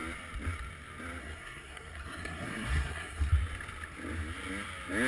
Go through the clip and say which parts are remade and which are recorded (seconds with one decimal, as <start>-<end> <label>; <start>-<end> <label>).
0.0-1.2 recorded; 1.2-3.3 remade; 3.3-5.1 recorded